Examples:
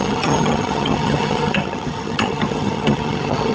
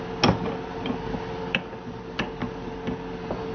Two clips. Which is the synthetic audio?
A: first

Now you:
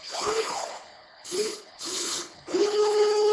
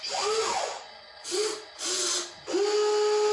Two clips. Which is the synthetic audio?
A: first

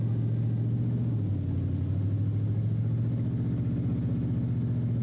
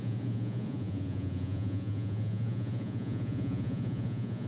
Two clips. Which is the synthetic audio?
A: second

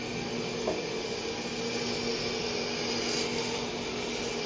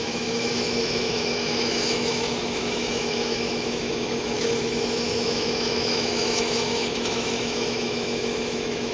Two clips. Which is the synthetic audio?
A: second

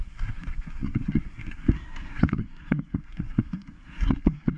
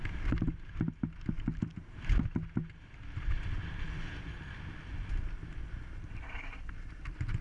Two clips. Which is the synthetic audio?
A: first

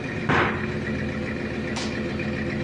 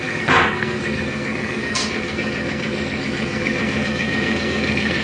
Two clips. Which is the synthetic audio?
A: second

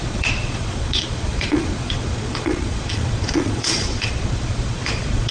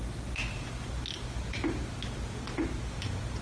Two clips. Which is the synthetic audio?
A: first